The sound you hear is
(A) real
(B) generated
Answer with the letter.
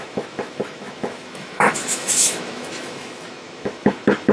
B